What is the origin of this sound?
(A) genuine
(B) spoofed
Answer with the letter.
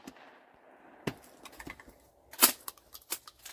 A